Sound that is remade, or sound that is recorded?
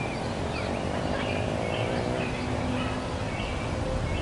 recorded